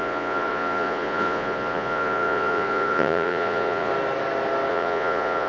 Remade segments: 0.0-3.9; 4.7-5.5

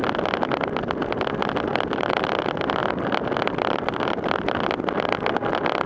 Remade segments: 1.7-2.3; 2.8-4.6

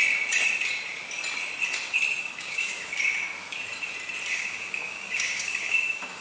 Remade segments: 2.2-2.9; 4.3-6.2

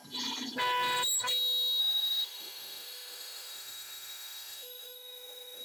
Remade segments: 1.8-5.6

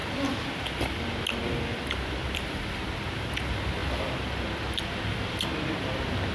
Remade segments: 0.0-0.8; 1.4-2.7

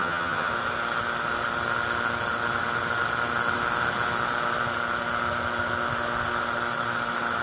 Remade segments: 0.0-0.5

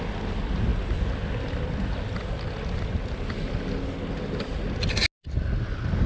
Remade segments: none